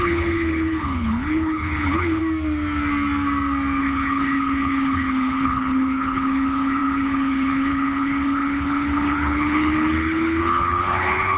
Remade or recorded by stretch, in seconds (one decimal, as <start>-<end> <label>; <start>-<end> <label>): 0.0-2.2 remade; 2.2-3.8 recorded; 3.8-11.4 remade